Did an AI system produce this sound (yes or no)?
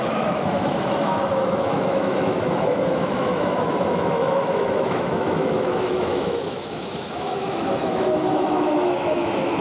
yes